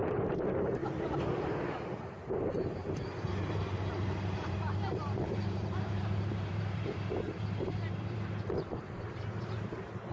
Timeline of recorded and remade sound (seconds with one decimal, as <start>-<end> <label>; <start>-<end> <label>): 0.0-0.8 remade; 0.8-2.3 recorded; 2.3-10.1 remade